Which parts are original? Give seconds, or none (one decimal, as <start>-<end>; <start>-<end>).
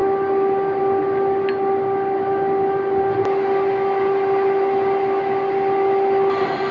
0.0-6.7